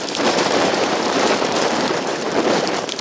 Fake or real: fake